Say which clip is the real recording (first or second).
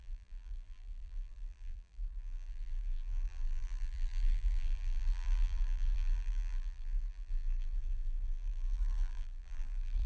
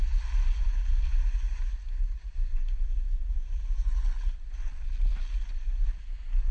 second